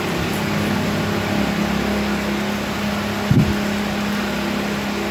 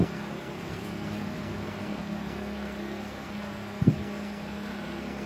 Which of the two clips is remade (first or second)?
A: second